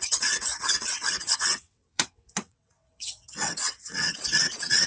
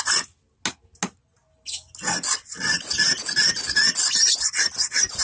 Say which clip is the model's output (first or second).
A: first